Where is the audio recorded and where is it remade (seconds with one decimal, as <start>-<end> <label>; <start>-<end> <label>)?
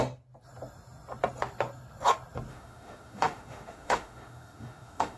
0.0-2.5 recorded; 2.5-5.2 remade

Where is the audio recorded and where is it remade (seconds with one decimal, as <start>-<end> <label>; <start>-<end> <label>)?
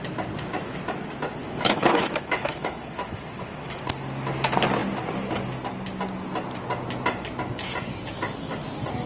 0.0-1.4 recorded; 1.4-3.8 remade; 3.8-9.1 recorded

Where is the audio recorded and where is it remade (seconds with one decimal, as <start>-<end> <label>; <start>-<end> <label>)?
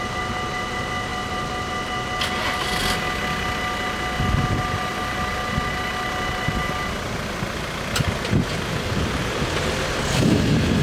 0.0-10.8 recorded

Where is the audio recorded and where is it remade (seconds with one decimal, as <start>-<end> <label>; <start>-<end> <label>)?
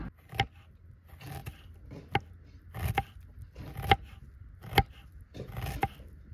0.0-6.3 recorded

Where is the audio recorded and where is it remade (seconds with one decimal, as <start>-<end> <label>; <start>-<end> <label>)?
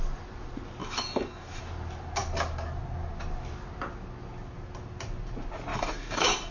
0.0-0.8 recorded; 0.8-1.6 remade; 1.6-5.7 recorded; 5.7-6.5 remade